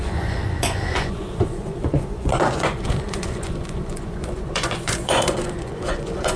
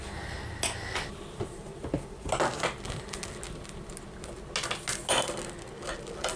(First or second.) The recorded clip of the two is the second